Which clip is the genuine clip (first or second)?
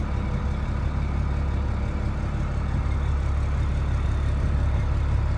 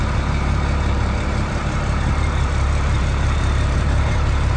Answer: first